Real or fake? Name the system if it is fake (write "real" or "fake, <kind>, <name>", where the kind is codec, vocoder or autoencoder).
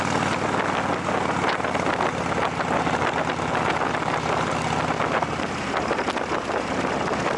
real